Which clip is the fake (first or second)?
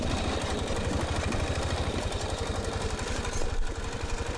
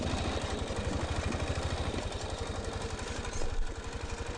first